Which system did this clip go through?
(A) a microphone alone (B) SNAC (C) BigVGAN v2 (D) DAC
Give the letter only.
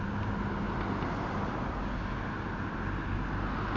A